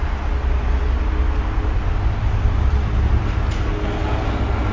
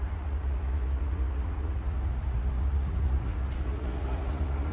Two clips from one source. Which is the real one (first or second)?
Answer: first